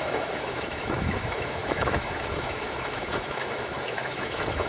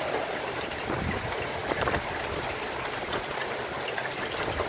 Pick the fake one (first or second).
first